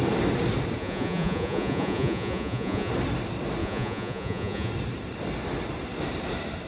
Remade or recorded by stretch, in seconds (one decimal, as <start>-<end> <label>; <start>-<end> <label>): 0.0-0.8 recorded; 0.8-2.9 remade; 2.9-3.6 recorded; 3.6-4.7 remade; 4.7-6.7 recorded